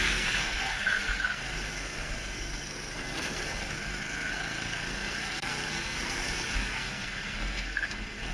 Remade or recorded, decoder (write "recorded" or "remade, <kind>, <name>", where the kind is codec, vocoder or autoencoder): remade, codec, SNAC